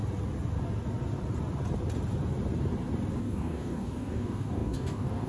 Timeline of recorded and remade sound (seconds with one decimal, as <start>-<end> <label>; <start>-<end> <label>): 0.0-3.2 recorded; 3.2-5.3 remade